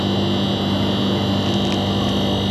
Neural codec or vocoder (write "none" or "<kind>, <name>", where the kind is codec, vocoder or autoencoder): none